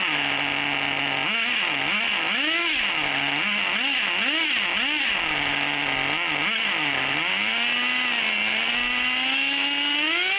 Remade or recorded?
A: recorded